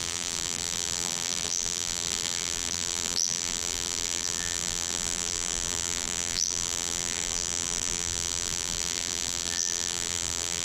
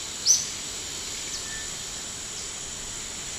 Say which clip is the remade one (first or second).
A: first